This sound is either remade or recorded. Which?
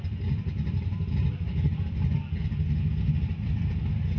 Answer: recorded